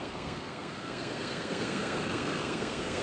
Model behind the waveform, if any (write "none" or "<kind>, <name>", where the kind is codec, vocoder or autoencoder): codec, SNAC